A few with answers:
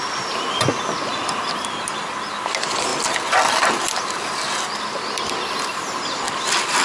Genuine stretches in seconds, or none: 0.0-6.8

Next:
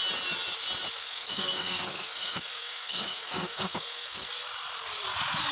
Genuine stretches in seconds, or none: 0.0-1.0; 4.3-5.5